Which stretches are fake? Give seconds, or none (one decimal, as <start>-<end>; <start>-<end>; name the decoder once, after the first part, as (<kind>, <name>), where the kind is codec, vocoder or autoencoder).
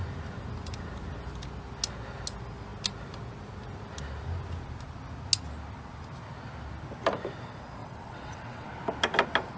7.8-8.7 (vocoder, WaveNeXt)